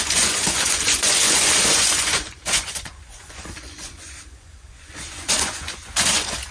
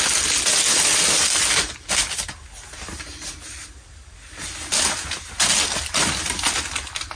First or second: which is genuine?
second